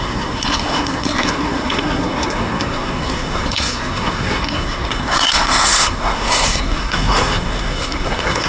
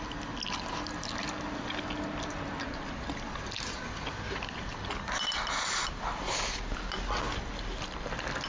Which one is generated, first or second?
first